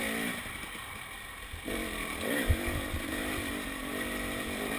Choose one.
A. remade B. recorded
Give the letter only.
A